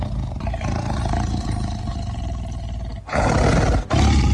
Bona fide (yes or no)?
yes